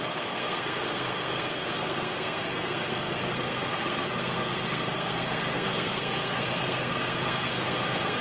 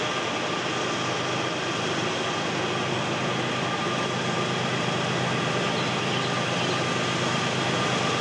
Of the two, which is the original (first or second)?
second